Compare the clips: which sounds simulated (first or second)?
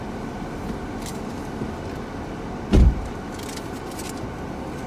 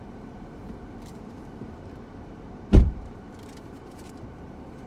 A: second